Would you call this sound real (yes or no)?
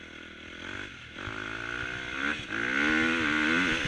yes